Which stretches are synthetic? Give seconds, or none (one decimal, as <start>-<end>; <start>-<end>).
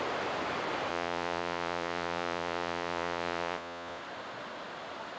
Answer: 0.9-4.0